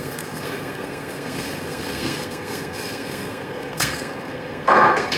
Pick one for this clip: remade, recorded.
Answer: remade